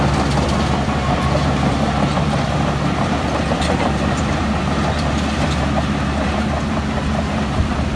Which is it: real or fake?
fake